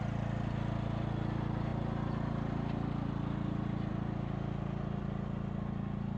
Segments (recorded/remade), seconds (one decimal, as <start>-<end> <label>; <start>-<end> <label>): 0.0-6.2 recorded